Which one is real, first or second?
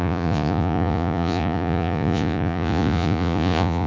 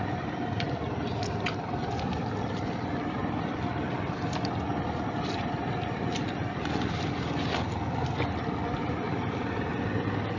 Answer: second